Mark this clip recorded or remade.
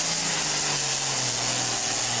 recorded